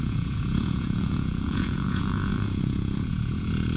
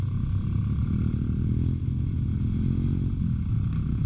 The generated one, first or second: first